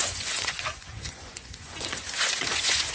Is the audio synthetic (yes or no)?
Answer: yes